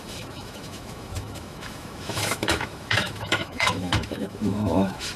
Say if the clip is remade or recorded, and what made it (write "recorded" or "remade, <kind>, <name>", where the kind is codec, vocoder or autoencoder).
remade, autoencoder, DAC-VAE